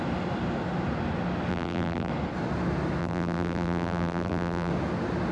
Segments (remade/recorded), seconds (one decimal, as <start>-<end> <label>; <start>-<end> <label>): 0.0-1.5 recorded; 1.5-2.1 remade; 2.1-3.0 recorded; 3.0-4.7 remade; 4.7-5.3 recorded